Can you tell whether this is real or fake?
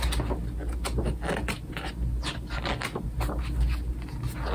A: real